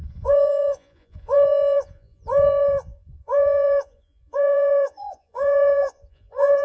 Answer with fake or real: fake